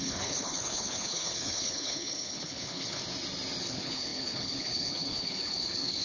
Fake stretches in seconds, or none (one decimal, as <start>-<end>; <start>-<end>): 0.0-3.0; 3.6-6.0